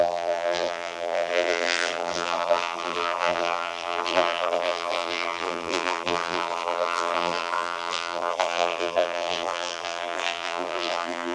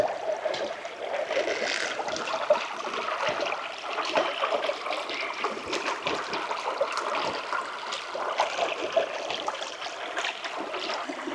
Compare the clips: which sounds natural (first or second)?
second